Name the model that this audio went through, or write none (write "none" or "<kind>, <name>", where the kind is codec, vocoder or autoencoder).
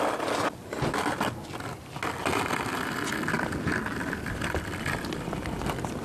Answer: none